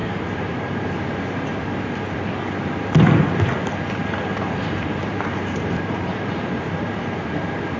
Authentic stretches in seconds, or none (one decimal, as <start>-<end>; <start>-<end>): 0.9-4.0; 7.2-7.8